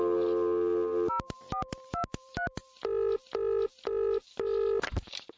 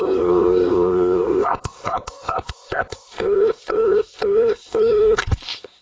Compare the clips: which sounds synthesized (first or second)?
second